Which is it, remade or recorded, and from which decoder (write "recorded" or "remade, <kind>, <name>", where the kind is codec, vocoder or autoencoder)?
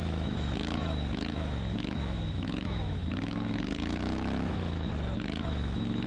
remade, autoencoder, DAC-VAE